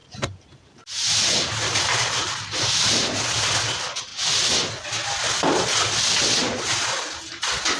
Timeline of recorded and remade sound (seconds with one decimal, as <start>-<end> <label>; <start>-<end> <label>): 0.0-3.3 remade; 3.3-4.1 recorded; 4.1-4.7 remade; 4.7-6.4 recorded; 6.4-7.1 remade; 7.1-7.8 recorded